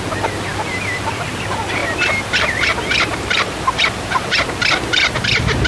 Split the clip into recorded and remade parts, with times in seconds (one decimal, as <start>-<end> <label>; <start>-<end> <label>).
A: 0.0-0.5 recorded; 0.5-1.1 remade; 1.1-1.8 recorded; 1.8-5.2 remade; 5.2-5.7 recorded